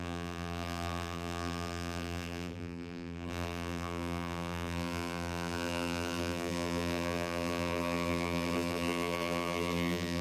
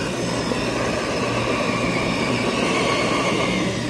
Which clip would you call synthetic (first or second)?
first